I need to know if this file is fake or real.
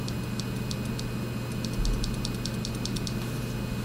real